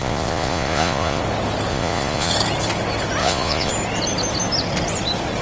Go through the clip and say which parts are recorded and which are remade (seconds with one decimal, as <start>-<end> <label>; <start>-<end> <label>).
0.0-1.2 remade; 1.2-1.7 recorded; 1.7-2.3 remade; 2.3-3.2 recorded; 3.2-3.7 remade; 3.7-5.4 recorded